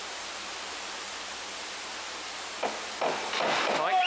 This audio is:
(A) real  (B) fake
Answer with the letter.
A